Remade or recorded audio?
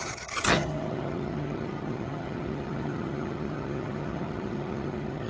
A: remade